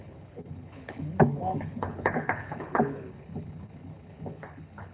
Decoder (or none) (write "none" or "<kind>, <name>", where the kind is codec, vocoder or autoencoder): codec, HILCodec